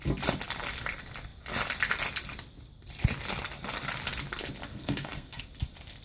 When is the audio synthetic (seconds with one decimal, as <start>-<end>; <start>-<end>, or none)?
4.7-5.4